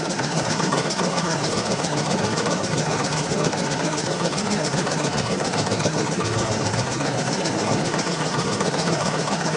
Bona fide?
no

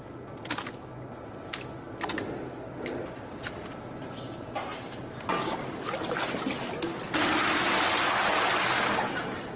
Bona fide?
yes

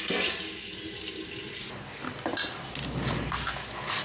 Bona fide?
yes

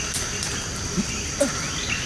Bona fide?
yes